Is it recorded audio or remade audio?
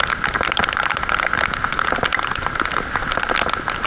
recorded